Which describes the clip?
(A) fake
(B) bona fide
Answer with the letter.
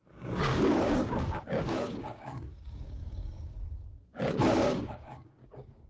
A